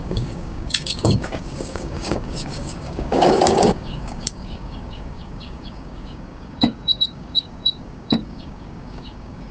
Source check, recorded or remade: remade